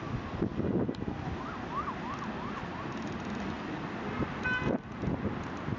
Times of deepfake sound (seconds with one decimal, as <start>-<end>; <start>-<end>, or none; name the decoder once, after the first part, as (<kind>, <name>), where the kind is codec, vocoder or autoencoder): none